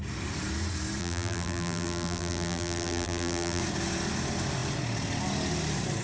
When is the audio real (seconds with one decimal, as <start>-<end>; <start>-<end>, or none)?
0.0-1.0; 3.6-6.0